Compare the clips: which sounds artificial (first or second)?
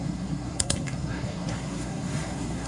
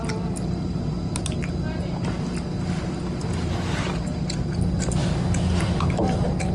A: first